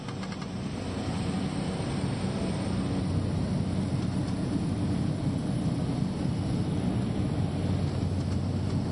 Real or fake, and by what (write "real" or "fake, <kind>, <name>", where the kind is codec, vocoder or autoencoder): real